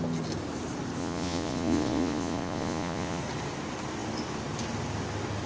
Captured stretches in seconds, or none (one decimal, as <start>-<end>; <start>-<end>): 0.0-1.0; 3.2-5.5